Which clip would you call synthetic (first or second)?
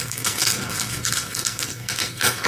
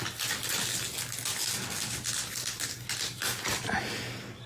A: first